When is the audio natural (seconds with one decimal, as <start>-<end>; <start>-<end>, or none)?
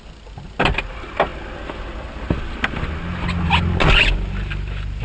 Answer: 0.0-5.0